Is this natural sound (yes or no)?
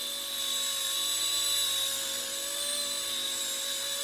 yes